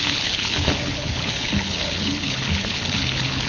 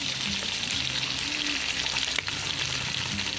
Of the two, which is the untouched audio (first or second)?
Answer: second